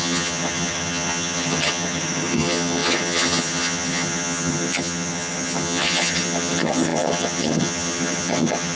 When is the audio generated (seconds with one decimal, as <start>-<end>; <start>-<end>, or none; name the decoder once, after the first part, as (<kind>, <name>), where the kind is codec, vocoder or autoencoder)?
0.0-8.8 (vocoder, HiFi-GAN)